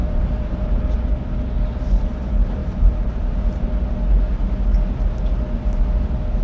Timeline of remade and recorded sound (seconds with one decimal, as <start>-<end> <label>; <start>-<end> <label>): 0.0-1.0 remade; 1.0-2.6 recorded; 2.6-3.2 remade; 3.2-6.4 recorded